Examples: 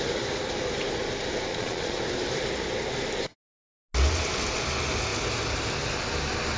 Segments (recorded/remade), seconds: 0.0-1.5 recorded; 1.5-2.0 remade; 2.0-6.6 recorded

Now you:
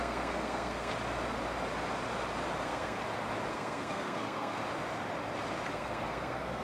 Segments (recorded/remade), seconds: 0.0-0.9 remade; 0.9-2.6 recorded; 2.6-3.0 remade; 3.0-3.5 recorded; 3.5-4.6 remade; 4.6-5.7 recorded; 5.7-6.6 remade

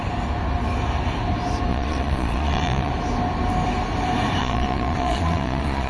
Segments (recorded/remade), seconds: 0.0-1.7 recorded; 1.7-2.9 remade; 2.9-4.4 recorded; 4.4-5.9 remade

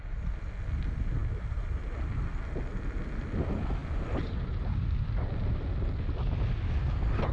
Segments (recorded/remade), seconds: 0.0-7.3 recorded

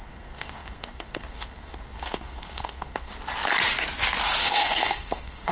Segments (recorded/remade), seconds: 0.0-3.1 remade; 3.1-4.4 recorded; 4.4-5.5 remade